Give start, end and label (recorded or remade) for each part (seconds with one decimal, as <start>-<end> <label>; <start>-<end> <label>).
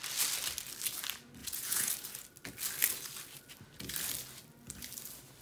0.0-1.4 recorded; 1.4-1.9 remade; 1.9-5.4 recorded